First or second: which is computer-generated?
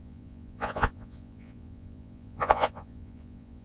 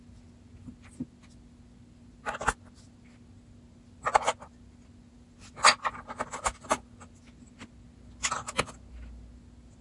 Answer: first